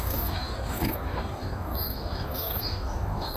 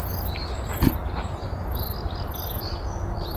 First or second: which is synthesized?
first